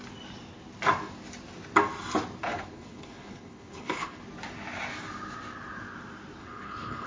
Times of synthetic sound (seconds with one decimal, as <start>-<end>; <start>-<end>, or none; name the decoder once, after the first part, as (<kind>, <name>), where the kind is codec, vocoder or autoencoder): 2.5-4.2 (codec, HILCodec); 6.4-7.1